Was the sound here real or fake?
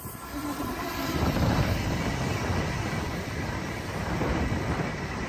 fake